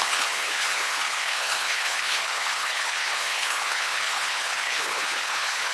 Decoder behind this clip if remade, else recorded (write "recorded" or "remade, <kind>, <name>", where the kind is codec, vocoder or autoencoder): remade, codec, HILCodec